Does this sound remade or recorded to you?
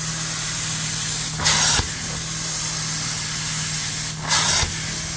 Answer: recorded